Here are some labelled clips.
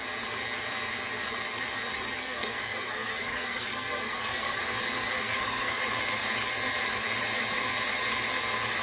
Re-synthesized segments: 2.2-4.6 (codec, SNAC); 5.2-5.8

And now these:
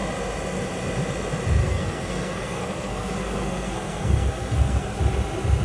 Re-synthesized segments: 1.6-5.0 (codec, SNAC)

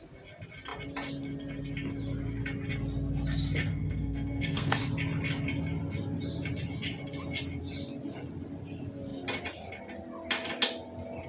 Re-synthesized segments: 3.7-4.8 (codec, SNAC)

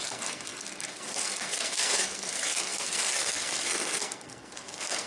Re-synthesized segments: 0.0-5.1 (codec, SNAC)